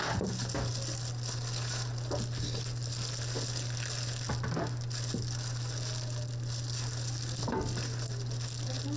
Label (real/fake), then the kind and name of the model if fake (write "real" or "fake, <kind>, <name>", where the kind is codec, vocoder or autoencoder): real